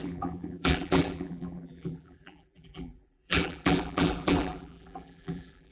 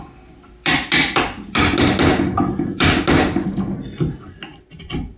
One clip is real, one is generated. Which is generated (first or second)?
first